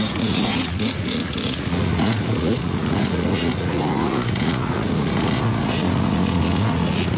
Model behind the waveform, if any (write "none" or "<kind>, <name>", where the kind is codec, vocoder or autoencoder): vocoder, Vocos